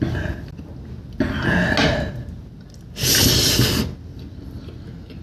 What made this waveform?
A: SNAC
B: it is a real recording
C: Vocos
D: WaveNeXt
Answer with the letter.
B